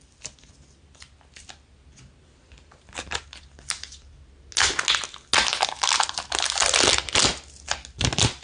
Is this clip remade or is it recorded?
recorded